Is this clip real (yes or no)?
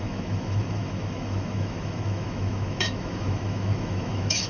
no